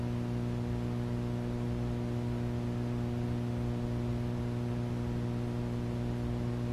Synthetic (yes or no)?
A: no